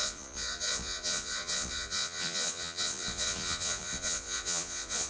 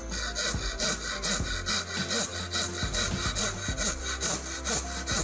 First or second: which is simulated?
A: first